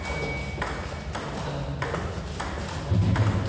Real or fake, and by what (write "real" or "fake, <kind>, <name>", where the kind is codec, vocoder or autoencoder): real